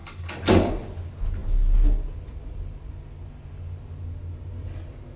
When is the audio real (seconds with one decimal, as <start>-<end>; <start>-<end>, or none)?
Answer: 0.7-5.2